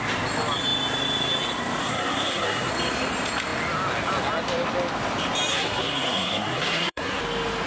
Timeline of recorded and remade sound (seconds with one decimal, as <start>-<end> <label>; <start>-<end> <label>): 0.0-1.8 recorded; 1.8-2.7 remade; 2.7-5.5 recorded; 5.5-7.2 remade; 7.2-7.7 recorded